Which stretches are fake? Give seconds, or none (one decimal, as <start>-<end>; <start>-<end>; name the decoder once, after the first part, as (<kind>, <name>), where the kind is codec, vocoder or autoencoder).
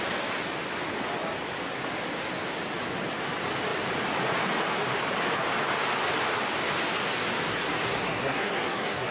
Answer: 7.5-9.1 (codec, SNAC)